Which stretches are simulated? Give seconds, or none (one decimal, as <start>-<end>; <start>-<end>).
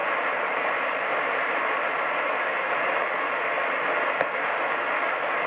0.0-3.0